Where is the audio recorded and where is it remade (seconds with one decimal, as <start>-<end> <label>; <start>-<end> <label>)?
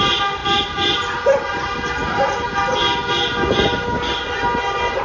0.0-5.0 recorded